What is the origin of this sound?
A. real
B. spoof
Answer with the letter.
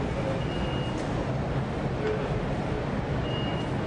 A